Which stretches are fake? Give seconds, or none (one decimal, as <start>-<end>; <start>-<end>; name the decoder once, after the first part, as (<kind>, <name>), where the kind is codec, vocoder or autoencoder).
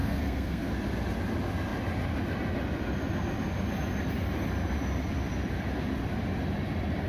0.0-0.7 (codec, SNAC)